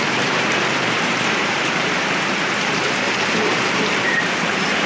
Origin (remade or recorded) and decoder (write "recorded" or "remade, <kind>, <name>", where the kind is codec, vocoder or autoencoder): remade, vocoder, BigVGAN v2